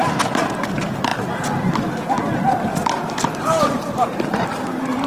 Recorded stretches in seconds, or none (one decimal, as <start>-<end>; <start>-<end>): 0.0-5.1